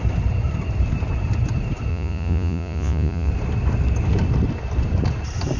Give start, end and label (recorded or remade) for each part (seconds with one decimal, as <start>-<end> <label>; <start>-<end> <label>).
0.0-1.9 recorded; 1.9-3.3 remade; 3.3-5.6 recorded